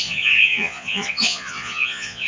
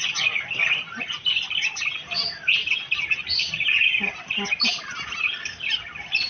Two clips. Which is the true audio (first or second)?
second